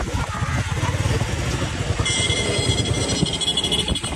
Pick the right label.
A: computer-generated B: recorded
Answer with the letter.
B